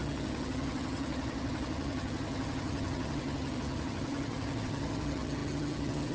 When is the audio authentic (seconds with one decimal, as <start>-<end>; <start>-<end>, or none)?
none